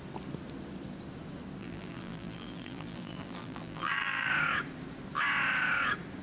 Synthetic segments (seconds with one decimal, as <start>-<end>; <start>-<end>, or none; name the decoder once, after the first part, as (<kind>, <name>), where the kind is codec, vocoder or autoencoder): 1.6-4.3 (vocoder, BigVGAN v2)